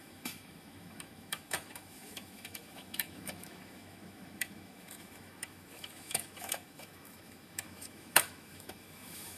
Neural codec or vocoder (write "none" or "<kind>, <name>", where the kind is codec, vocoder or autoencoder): autoencoder, DAC-VAE